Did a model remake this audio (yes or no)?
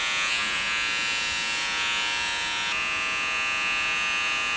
yes